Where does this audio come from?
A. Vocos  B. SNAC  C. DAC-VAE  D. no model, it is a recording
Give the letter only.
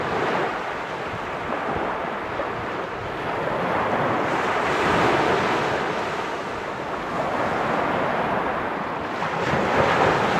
D